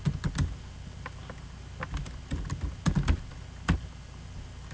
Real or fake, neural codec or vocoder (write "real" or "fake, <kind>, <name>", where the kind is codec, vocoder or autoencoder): real